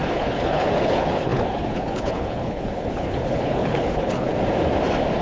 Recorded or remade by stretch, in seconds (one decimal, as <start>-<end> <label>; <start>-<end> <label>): 0.0-4.3 remade; 4.3-5.2 recorded